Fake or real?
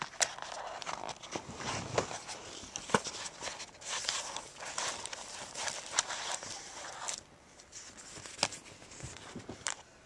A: real